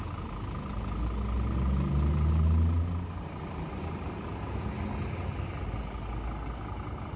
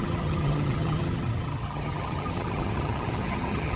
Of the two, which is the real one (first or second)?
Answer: first